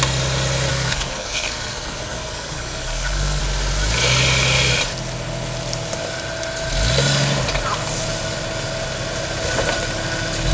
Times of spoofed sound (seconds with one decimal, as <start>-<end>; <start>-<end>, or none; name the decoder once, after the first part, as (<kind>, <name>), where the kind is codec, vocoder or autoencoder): 0.7-3.4 (codec, SNAC)